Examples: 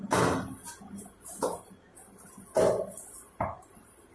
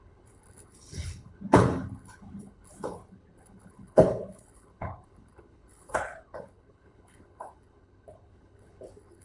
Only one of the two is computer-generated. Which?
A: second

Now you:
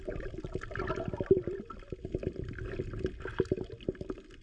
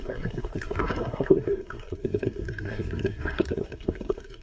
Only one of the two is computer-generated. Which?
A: second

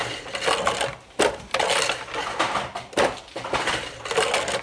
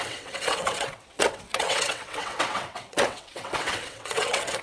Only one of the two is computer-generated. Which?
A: second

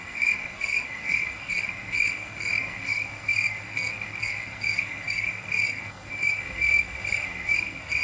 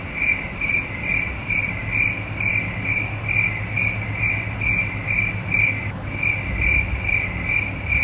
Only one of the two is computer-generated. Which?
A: first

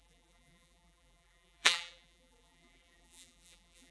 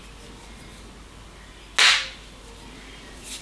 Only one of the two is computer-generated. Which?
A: first